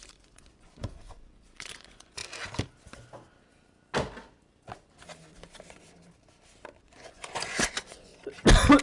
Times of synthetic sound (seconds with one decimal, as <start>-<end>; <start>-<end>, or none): 0.0-2.2; 6.8-8.1